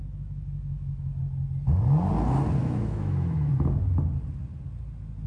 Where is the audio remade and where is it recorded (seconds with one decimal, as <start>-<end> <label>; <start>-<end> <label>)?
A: 0.0-1.2 remade; 1.2-2.6 recorded; 2.6-3.5 remade; 3.5-5.3 recorded